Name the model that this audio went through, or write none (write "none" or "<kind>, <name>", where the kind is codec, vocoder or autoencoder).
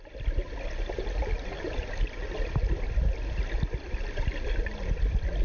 none